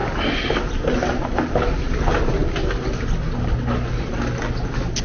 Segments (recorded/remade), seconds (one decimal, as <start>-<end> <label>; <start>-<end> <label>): 0.0-5.0 recorded